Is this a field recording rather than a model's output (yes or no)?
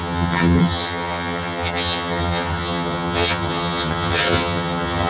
no